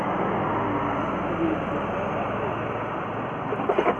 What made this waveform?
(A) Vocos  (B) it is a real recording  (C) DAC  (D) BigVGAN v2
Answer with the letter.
B